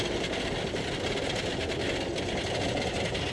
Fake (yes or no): no